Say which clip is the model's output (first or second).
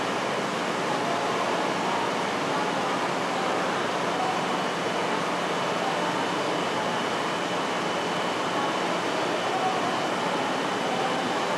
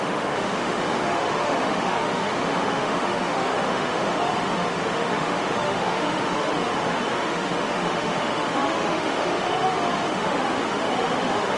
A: second